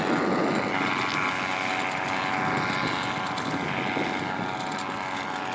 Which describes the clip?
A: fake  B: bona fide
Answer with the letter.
B